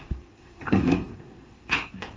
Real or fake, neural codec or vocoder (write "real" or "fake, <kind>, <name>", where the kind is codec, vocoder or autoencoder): fake, codec, SNAC